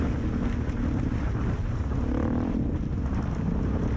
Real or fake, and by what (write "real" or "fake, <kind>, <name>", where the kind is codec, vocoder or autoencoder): real